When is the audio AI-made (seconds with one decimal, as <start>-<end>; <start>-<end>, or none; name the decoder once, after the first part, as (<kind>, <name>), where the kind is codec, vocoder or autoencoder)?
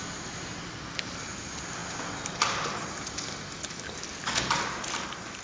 none